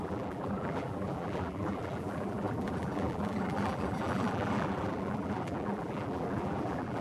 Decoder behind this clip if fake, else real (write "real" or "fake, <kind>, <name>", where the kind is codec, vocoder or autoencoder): fake, vocoder, BigVGAN v2